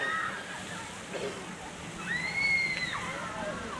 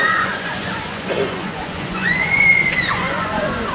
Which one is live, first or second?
first